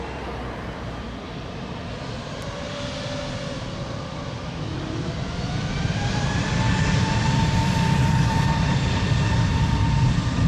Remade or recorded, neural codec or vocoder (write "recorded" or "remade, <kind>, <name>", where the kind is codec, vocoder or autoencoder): remade, vocoder, BigVGAN v2